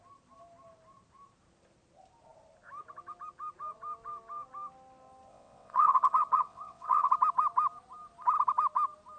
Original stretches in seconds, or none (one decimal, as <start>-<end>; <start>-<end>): 0.0-5.3; 7.1-9.2